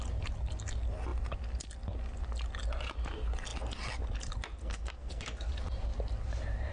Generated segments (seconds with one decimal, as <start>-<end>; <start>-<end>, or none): 4.6-5.5